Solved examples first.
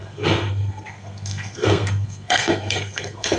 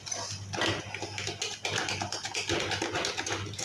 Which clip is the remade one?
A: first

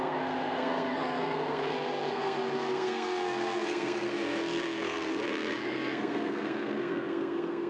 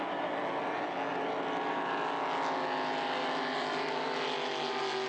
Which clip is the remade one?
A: first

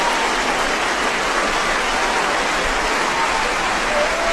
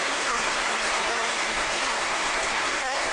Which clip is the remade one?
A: second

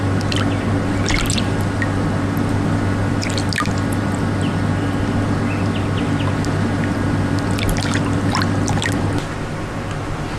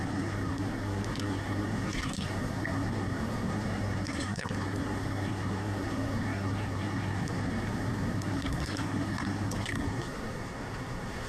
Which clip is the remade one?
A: second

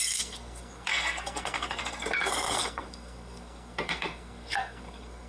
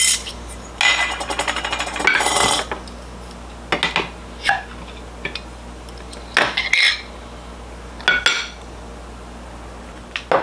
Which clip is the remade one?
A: first